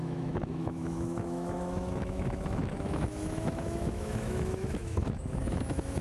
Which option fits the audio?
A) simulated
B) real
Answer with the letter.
A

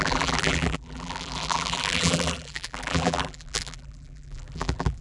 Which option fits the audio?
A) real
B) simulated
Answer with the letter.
B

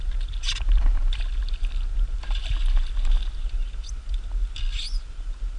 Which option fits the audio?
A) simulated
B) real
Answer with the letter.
B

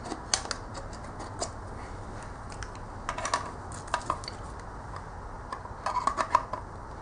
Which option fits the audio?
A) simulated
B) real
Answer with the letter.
B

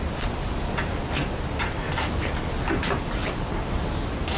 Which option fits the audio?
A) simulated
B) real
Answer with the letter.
B